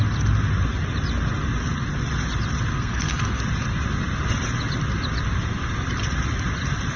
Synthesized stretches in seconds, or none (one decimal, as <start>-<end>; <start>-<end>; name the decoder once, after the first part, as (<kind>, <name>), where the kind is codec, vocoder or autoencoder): 2.7-3.4 (codec, SNAC)